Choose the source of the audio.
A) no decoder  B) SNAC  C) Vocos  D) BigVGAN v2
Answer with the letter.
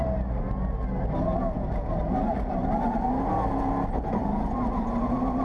A